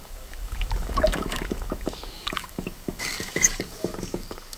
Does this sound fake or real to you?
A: fake